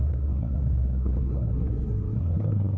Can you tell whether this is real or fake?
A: fake